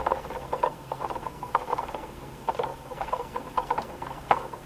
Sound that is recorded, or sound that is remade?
remade